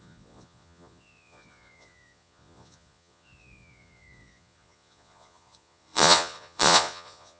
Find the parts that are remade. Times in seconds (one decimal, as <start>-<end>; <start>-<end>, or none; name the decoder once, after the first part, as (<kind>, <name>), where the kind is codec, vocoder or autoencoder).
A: 0.0-7.4 (vocoder, Vocos)